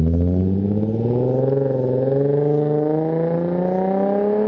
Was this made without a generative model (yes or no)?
yes